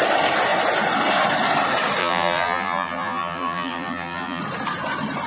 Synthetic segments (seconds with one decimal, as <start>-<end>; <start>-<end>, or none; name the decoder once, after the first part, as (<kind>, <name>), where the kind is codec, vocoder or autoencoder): 2.0-4.4 (vocoder, BigVGAN v2)